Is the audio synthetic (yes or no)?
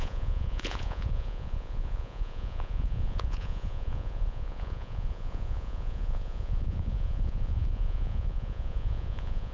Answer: yes